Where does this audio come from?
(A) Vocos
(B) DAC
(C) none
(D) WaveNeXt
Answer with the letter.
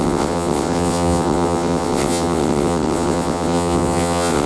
D